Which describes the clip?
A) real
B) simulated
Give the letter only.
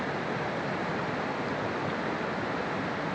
A